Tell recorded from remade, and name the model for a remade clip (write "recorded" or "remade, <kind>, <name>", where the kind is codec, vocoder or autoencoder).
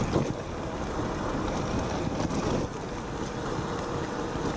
recorded